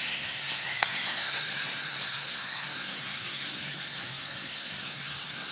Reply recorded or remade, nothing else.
remade